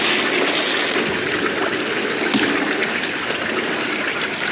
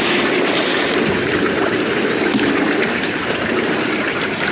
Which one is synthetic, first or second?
second